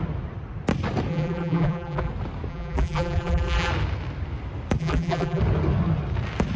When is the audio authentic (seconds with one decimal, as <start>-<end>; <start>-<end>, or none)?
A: 0.0-1.1; 2.1-2.5; 3.7-4.8; 5.4-6.6